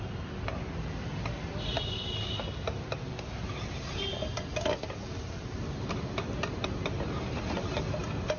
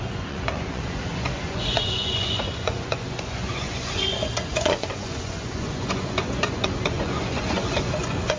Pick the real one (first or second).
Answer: first